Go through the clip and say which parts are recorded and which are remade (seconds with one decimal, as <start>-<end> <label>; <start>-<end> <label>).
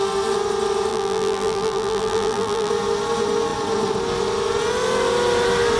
0.0-0.9 recorded; 0.9-2.7 remade; 2.7-5.8 recorded